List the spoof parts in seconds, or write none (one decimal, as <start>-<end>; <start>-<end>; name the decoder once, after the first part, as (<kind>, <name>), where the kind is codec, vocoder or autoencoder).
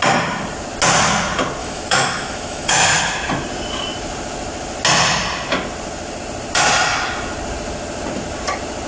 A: 1.6-3.0 (autoencoder, DAC-VAE)